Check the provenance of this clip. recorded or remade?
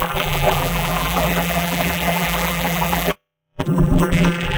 remade